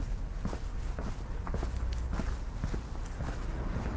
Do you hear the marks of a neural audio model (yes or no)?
no